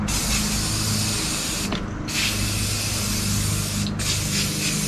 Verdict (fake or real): real